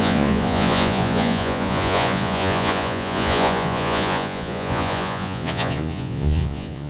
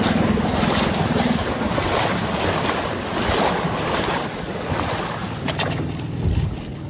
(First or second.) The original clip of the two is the second